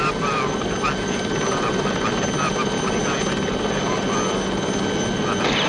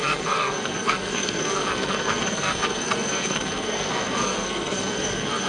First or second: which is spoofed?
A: second